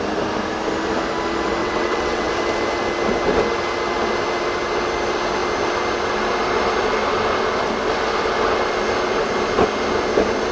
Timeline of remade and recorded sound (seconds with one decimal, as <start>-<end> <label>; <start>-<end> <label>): 0.0-1.6 recorded; 1.6-2.3 remade; 2.3-10.5 recorded